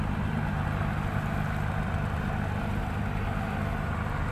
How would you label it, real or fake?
real